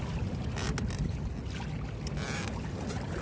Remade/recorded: recorded